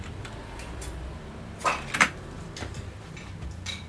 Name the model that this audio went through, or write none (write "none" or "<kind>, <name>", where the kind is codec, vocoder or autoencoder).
vocoder, BigVGAN v2